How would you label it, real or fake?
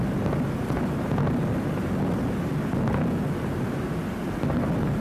real